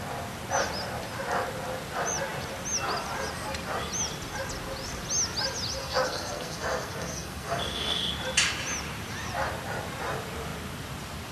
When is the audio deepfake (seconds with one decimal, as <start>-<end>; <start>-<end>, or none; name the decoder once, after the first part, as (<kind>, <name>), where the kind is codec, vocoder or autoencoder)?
5.8-8.1 (codec, SNAC)